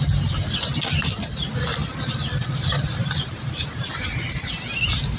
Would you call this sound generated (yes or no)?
no